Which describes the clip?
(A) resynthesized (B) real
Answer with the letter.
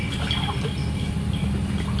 B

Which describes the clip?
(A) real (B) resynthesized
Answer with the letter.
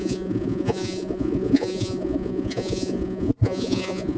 B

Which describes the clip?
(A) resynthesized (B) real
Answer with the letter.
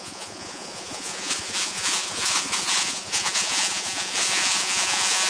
A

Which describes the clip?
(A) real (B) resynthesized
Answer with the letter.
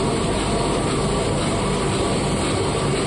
A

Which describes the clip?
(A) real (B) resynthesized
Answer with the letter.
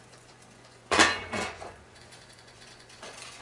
B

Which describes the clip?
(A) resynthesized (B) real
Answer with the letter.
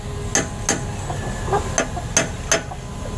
B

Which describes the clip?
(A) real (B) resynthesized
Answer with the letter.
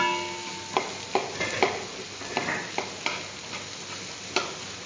A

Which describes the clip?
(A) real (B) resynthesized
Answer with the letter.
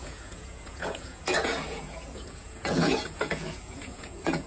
B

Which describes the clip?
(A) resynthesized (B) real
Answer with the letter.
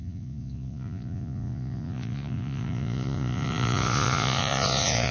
A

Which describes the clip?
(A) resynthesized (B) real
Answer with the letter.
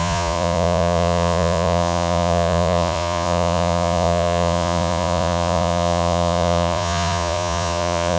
A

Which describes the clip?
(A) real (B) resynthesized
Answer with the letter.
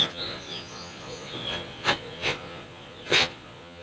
B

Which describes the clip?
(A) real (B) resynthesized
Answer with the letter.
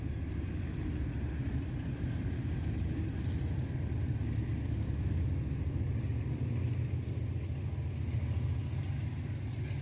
A